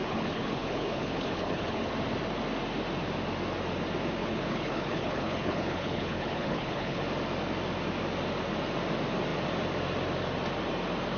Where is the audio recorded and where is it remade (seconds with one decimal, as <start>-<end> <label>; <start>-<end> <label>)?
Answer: 0.0-1.9 remade; 1.9-4.2 recorded; 4.2-7.0 remade; 7.0-11.2 recorded